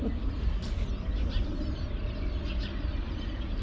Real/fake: real